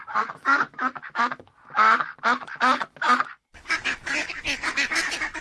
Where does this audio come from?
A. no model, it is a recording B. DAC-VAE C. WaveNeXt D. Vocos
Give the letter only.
B